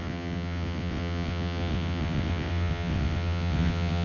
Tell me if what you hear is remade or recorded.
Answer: remade